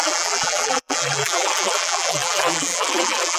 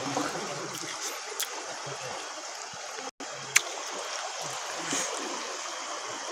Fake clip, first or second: first